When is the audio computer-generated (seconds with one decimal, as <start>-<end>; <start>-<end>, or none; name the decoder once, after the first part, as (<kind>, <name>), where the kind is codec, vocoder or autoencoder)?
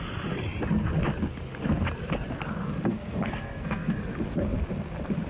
2.9-4.0 (codec, SNAC)